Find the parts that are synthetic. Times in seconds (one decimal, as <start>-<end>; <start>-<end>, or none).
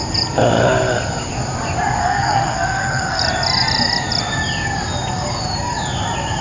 2.0-3.2